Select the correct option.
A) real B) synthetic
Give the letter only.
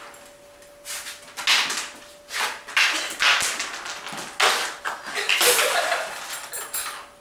A